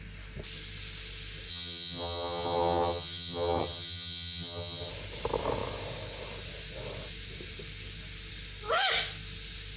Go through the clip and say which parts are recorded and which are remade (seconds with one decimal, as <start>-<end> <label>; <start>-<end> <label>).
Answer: 0.0-1.5 recorded; 1.5-4.9 remade; 4.9-9.8 recorded